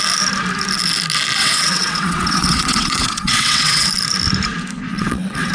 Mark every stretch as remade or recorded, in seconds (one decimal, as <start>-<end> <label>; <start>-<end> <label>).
0.0-1.4 recorded; 1.4-3.9 remade; 3.9-4.9 recorded; 4.9-5.5 remade